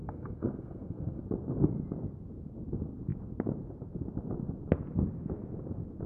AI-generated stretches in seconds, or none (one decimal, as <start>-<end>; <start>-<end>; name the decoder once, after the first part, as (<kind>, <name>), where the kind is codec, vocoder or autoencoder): 0.0-1.2 (codec, SNAC)